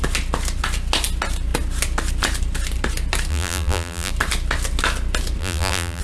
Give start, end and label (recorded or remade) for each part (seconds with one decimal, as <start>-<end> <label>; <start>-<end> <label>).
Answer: 0.0-3.3 recorded; 3.3-4.1 remade; 4.1-5.4 recorded; 5.4-6.0 remade